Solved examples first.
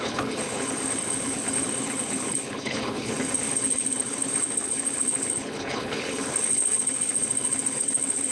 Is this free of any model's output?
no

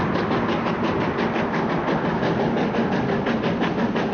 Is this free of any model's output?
yes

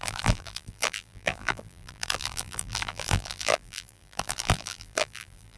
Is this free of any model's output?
no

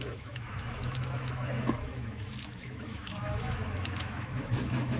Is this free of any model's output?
no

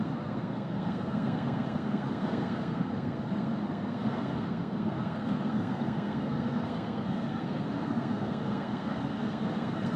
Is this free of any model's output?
no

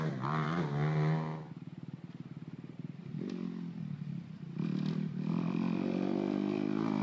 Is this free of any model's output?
yes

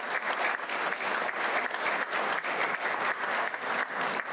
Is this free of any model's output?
yes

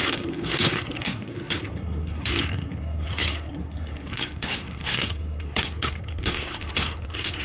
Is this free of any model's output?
no